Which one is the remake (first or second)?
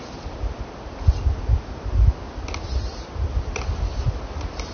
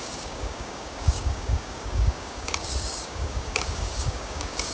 second